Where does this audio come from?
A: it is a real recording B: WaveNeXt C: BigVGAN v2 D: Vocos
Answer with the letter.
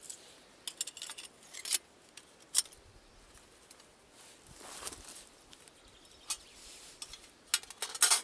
A